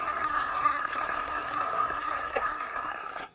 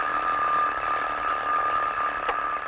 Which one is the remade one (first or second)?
first